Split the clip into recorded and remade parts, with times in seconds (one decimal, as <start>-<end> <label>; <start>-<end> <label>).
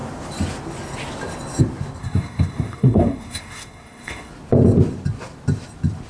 0.0-2.0 recorded; 2.0-4.3 remade; 4.3-6.1 recorded